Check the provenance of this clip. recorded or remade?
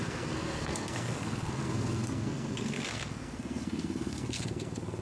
remade